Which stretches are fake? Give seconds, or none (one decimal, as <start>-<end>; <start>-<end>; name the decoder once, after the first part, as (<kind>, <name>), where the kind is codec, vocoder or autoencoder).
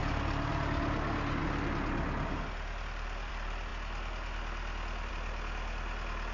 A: 0.0-0.5 (vocoder, BigVGAN v2)